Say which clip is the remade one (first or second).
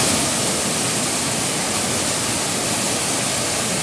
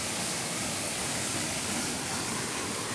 second